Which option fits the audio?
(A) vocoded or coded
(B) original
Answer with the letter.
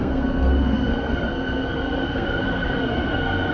A